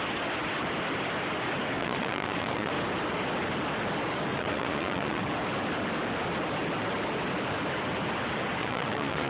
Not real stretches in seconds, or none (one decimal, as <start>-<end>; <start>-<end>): 1.8-2.7; 4.3-5.2; 8.6-9.3